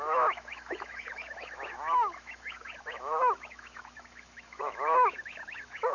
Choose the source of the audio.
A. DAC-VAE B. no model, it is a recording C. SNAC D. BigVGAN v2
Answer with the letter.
A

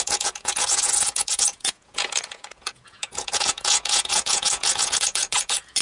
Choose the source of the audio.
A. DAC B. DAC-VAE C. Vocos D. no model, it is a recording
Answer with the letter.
C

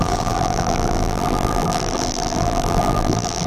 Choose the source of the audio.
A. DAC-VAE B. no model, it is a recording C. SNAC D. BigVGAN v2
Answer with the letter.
D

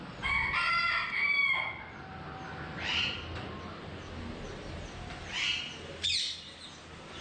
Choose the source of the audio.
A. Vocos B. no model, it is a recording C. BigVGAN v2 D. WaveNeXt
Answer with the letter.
B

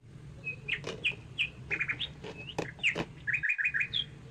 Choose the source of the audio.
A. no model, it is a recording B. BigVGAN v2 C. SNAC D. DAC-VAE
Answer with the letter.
A